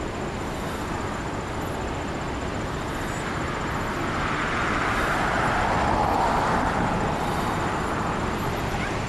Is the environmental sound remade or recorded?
recorded